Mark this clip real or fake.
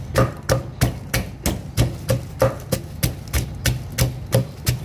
real